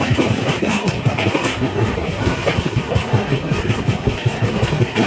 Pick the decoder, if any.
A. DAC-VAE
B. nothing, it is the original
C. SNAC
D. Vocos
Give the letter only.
C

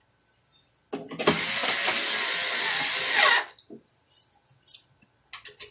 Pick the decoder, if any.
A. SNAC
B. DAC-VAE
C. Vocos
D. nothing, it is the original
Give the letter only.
D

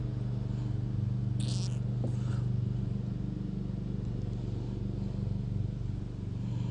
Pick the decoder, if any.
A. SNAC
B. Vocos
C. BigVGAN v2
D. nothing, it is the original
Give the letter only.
D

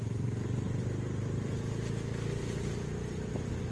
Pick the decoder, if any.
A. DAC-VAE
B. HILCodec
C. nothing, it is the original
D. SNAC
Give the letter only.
C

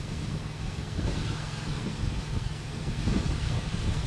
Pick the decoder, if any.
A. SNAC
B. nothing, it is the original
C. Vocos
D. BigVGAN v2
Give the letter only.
A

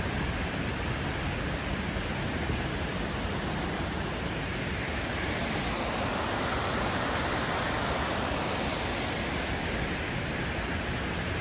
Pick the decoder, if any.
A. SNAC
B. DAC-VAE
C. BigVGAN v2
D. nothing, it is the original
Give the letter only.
D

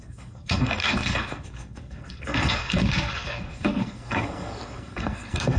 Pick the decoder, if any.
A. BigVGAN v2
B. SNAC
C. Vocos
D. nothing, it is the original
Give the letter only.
B